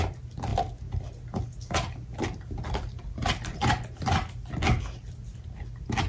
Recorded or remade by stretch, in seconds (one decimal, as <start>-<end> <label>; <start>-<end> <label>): 0.0-6.1 recorded